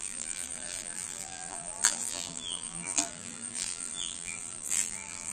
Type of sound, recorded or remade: remade